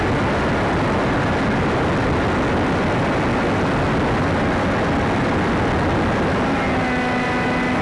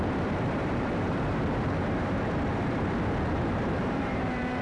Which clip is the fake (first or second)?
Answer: second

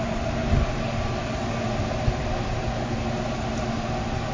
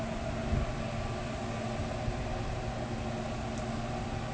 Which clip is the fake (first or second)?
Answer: first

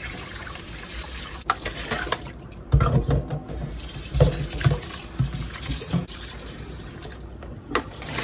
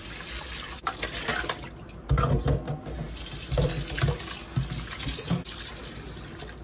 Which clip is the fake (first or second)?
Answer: first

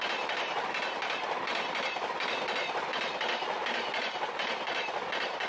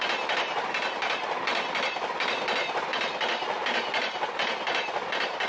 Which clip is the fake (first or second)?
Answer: first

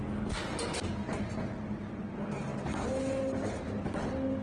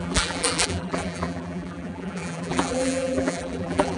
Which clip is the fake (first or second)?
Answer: second